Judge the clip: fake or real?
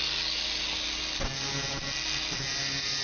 real